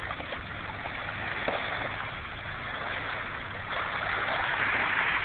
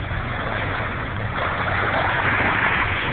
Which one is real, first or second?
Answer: first